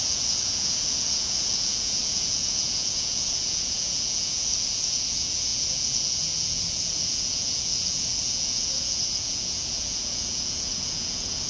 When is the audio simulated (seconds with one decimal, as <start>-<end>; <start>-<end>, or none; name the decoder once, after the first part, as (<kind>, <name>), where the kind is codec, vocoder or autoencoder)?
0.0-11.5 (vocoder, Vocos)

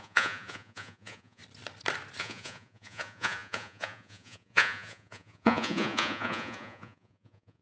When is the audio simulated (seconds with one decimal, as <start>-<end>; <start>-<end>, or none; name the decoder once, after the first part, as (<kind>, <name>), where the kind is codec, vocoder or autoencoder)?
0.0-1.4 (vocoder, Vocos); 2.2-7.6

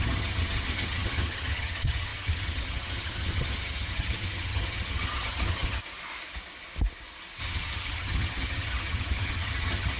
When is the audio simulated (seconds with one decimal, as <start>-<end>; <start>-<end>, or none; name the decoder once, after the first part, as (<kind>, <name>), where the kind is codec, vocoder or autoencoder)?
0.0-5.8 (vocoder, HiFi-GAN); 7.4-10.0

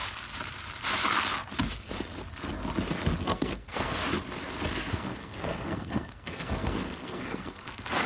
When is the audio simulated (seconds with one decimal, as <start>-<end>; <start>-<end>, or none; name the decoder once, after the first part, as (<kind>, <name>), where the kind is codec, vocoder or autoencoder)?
3.2-4.0 (codec, SNAC); 4.9-8.1